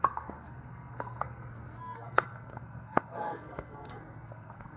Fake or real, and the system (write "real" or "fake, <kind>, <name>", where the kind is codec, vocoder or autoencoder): fake, codec, SNAC